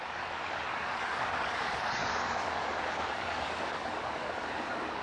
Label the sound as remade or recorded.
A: remade